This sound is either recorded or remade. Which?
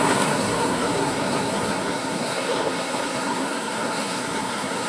remade